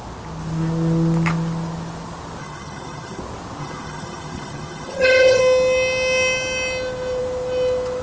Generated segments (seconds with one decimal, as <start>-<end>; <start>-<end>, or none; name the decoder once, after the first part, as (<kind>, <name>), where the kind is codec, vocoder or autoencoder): 2.4-3.2 (vocoder, HiFi-GAN); 3.6-5.4

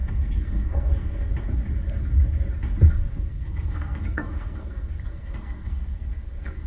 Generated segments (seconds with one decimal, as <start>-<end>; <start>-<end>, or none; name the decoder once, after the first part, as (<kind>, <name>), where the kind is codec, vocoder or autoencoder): 0.0-1.3 (codec, SNAC); 3.1-6.7

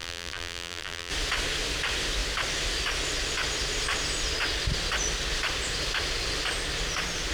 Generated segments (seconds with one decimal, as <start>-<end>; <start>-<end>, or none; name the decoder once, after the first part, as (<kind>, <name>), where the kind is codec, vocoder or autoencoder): 0.0-1.1 (vocoder, BigVGAN v2)

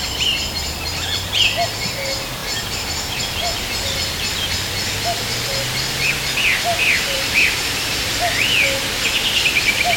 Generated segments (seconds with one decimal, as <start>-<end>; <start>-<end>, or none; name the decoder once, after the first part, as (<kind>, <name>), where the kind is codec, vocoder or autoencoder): 6.7-8.1 (vocoder, BigVGAN v2)

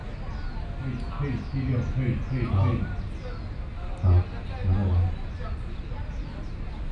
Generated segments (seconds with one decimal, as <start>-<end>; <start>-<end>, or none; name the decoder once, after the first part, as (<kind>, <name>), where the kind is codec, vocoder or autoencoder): none

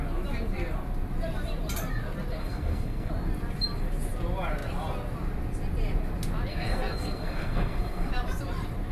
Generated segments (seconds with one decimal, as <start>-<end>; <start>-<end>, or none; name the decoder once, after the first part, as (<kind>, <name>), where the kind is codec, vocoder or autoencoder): 2.4-3.1 (codec, SNAC); 6.5-8.1

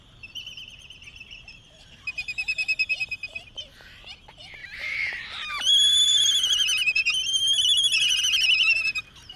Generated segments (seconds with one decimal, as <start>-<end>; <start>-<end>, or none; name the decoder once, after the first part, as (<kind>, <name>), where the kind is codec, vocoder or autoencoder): 0.0-9.4 (vocoder, BigVGAN v2)